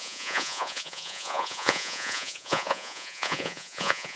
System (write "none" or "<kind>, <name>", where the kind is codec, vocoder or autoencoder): vocoder, Vocos